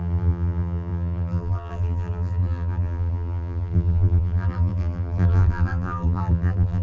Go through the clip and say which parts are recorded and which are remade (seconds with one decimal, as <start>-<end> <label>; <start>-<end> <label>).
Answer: 0.0-6.8 remade